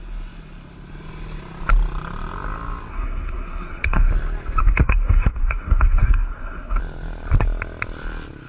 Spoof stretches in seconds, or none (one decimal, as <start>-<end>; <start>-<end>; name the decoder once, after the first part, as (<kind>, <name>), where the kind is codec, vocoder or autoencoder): 2.9-4.1 (codec, SNAC); 4.6-6.8